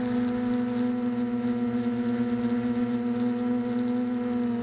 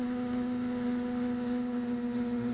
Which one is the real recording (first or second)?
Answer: first